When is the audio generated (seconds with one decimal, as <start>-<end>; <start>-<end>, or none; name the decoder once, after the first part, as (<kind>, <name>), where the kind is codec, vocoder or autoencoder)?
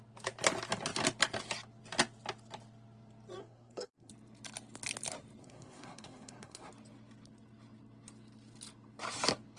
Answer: 3.4-4.1 (codec, SNAC); 5.4-6.7